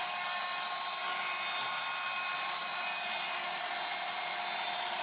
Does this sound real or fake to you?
real